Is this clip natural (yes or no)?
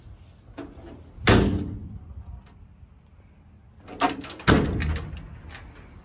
yes